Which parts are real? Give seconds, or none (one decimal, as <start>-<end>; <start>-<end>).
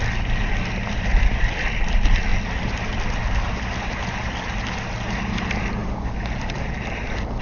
0.0-7.4